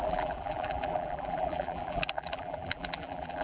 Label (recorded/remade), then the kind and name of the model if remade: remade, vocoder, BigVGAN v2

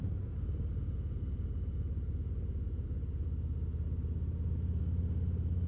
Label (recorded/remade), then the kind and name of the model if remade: recorded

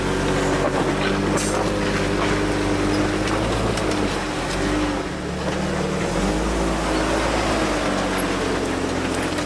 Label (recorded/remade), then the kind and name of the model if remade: recorded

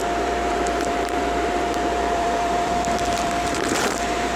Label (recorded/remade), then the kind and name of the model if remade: remade, vocoder, BigVGAN v2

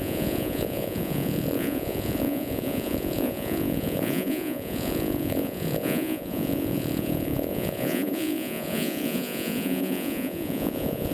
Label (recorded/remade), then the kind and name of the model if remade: remade, vocoder, Vocos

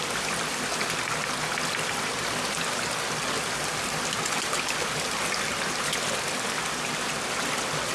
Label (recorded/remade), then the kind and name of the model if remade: recorded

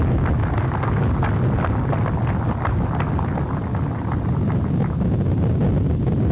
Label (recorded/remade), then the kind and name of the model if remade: recorded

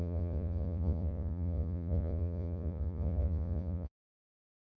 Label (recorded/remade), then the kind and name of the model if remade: remade, vocoder, Vocos